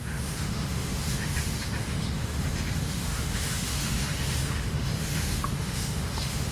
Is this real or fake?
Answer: fake